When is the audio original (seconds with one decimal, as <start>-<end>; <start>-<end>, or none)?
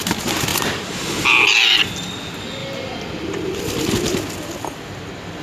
0.0-2.6; 3.9-5.4